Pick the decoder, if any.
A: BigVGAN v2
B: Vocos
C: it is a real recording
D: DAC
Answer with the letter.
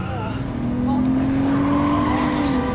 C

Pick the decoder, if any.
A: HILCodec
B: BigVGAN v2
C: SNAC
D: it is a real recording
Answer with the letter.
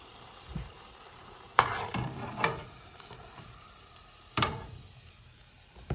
B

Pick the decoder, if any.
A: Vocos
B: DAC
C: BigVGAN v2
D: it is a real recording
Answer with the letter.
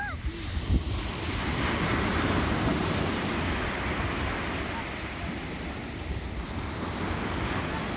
D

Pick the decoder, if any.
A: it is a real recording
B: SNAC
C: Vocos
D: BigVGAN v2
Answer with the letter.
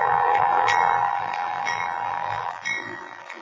D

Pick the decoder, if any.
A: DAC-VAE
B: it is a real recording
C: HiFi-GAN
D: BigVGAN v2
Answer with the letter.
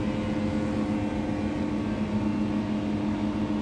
B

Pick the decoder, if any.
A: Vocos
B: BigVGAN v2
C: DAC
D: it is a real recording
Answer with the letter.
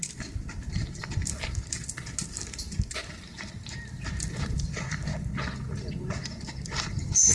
D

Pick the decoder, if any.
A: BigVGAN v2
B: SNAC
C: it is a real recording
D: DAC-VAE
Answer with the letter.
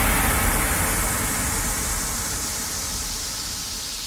C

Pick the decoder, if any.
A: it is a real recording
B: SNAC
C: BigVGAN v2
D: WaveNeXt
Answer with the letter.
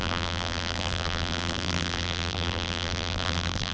C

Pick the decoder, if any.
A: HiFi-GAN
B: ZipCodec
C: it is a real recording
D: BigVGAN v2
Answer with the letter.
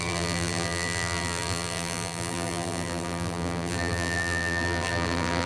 D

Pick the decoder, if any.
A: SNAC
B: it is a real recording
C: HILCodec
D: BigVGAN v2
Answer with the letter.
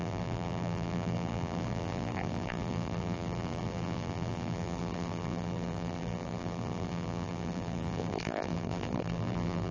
D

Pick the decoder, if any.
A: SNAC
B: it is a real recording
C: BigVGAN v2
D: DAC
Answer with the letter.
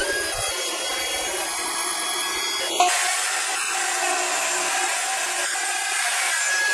B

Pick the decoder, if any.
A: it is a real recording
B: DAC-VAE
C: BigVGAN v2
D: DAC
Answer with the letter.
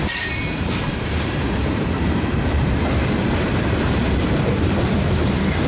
C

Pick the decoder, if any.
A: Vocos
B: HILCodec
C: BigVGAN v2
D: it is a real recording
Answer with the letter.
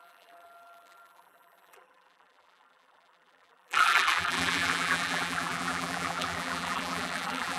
C